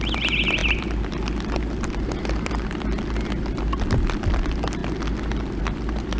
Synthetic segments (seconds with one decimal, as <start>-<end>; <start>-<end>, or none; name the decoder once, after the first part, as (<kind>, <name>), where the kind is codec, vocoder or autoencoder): none